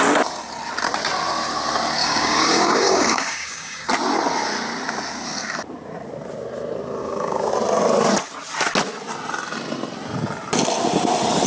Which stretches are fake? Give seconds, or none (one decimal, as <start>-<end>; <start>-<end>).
2.0-3.9; 7.0-7.5